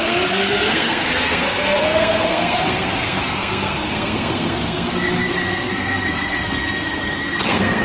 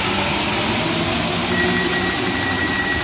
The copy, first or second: first